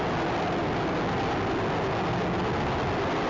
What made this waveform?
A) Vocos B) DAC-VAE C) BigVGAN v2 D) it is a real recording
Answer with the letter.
D